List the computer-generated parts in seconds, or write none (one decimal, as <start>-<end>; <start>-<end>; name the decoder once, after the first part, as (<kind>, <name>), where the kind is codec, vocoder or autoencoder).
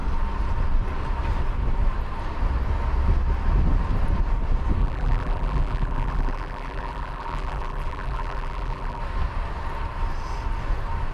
4.8-9.0 (vocoder, BigVGAN v2)